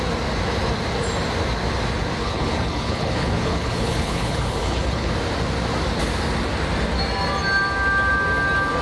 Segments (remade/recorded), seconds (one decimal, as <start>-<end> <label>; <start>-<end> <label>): 0.0-2.2 recorded; 2.2-5.1 remade; 5.1-8.8 recorded